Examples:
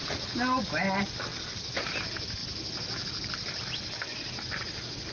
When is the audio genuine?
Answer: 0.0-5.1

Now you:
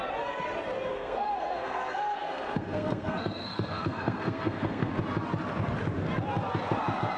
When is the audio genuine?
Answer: 0.0-0.9; 4.9-7.2

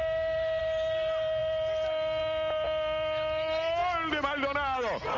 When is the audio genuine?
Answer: 0.0-5.2

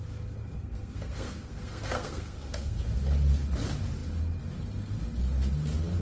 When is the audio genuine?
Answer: 0.0-0.4; 2.8-6.0

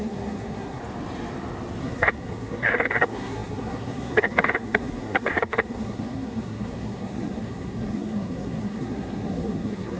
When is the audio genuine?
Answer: 0.8-1.8

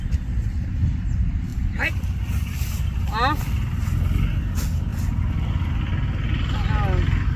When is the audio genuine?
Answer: 0.0-7.4

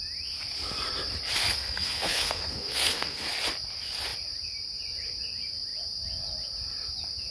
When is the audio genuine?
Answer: 0.0-1.4; 3.3-7.3